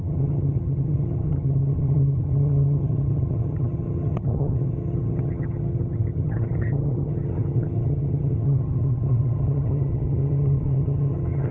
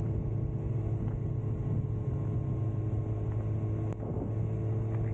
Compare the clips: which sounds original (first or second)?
second